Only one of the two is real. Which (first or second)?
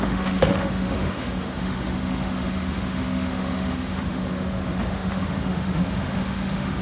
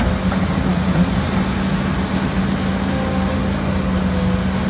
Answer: second